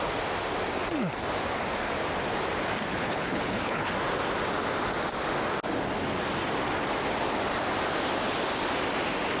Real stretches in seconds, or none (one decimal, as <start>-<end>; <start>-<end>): 0.0-2.9; 3.9-9.4